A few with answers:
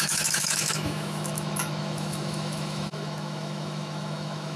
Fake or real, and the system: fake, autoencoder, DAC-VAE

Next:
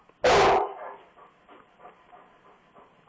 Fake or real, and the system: real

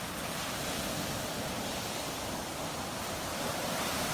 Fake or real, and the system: real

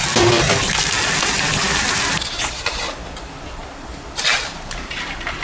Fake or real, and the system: real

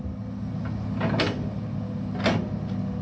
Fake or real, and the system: real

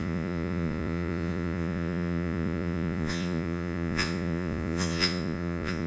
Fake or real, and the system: fake, vocoder, Vocos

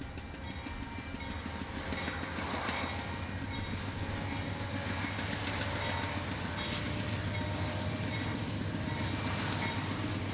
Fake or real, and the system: real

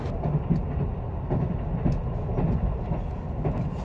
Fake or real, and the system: real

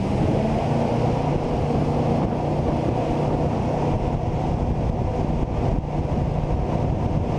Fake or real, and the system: real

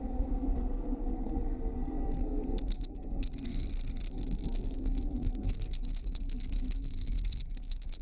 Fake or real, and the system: fake, codec, SNAC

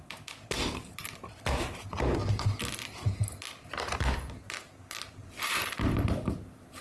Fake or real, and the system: real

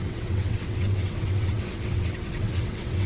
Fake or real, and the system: fake, vocoder, WaveNeXt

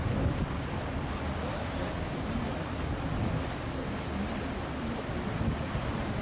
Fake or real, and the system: real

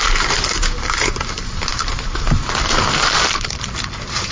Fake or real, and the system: fake, vocoder, BigVGAN v2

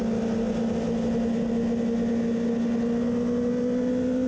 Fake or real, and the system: real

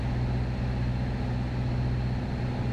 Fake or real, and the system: real